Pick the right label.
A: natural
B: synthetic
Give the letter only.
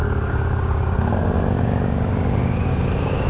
B